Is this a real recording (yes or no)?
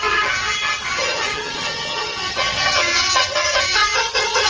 no